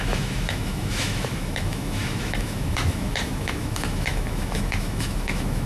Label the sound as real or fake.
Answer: fake